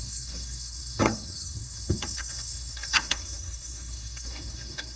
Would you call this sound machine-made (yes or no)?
yes